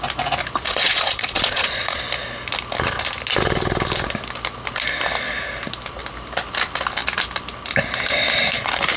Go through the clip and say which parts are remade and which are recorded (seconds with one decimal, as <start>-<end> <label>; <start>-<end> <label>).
0.0-0.7 recorded; 0.7-2.0 remade; 2.0-9.0 recorded